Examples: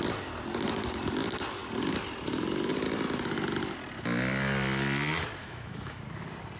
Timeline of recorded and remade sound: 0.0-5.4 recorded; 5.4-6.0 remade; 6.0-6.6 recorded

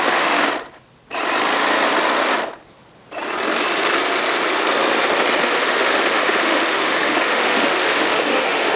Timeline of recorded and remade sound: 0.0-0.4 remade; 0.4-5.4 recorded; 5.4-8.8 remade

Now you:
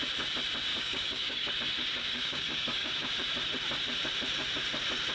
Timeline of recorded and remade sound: 0.0-0.7 recorded; 0.7-1.6 remade; 1.6-2.0 recorded; 2.0-3.1 remade; 3.1-5.1 recorded

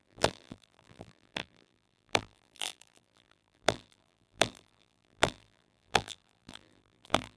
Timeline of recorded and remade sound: 0.0-7.4 remade

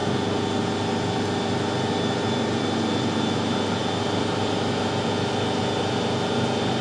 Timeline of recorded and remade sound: 0.0-6.8 recorded

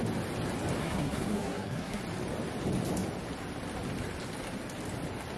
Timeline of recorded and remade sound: 0.0-0.8 recorded; 0.8-2.0 remade; 2.0-5.4 recorded

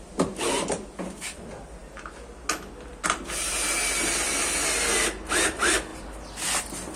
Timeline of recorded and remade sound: 0.0-7.0 recorded

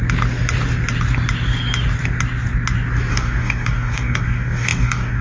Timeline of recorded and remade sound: 0.0-3.1 recorded; 3.1-5.2 remade